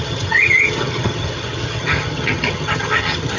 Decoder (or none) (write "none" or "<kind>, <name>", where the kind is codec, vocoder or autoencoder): vocoder, HiFi-GAN